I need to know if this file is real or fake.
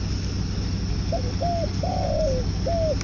real